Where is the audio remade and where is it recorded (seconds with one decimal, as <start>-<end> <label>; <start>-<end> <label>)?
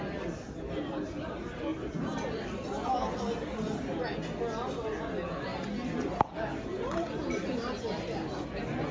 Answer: 0.0-8.9 recorded